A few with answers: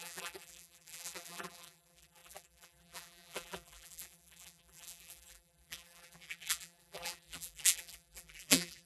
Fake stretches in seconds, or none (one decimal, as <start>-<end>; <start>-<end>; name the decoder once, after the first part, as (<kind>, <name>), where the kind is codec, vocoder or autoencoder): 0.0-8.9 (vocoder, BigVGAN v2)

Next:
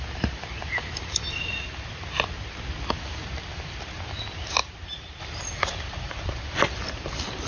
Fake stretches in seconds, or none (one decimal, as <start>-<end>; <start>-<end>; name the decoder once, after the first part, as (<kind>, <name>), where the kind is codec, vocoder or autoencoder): 4.6-5.2 (vocoder, BigVGAN v2)

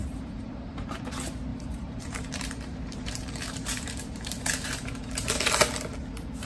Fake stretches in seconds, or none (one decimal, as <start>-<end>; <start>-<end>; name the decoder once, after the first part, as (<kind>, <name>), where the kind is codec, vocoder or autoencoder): 0.0-1.0 (vocoder, BigVGAN v2); 1.5-5.4

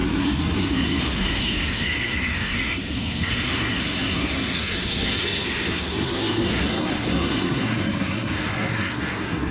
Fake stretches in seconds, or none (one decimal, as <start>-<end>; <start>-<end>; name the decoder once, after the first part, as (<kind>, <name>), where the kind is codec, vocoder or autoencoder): 0.0-9.5 (codec, SNAC)

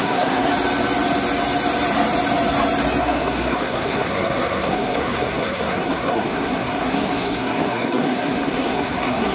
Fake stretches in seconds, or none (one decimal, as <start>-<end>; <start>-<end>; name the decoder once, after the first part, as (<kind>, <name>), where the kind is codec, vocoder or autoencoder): 0.0-0.5 (codec, SNAC); 3.0-9.3

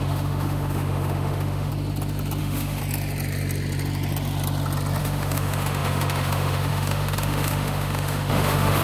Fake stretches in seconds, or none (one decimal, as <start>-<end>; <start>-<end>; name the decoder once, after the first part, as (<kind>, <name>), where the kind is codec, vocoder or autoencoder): 0.0-1.7 (autoencoder, DAC-VAE); 2.4-2.8; 5.0-8.8